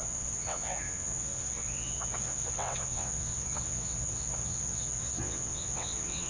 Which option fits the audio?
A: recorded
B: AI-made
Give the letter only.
B